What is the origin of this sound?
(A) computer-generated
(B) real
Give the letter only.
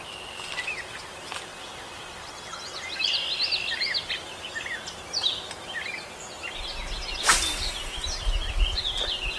B